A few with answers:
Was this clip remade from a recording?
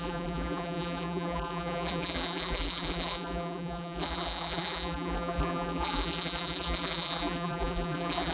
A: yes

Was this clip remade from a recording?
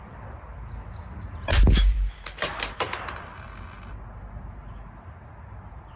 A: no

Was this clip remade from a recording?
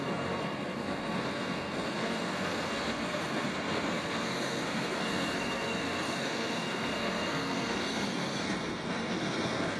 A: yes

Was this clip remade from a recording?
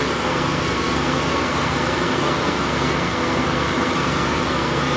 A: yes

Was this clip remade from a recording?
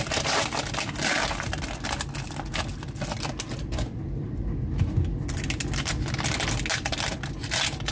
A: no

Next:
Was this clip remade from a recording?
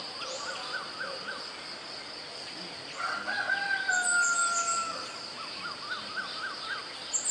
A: no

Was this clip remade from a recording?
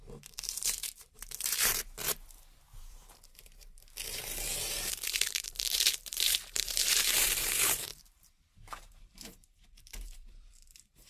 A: yes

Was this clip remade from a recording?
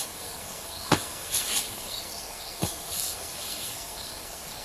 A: yes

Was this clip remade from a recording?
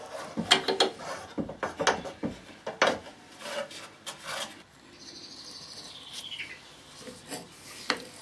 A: no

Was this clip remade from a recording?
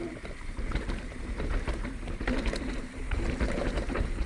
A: yes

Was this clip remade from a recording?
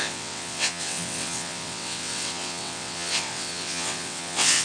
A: yes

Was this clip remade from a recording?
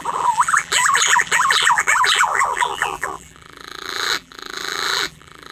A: yes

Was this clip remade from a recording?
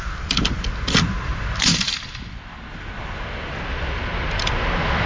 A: no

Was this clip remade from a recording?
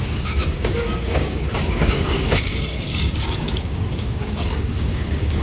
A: yes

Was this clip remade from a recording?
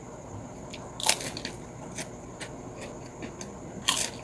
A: no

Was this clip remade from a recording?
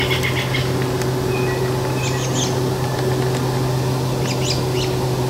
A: no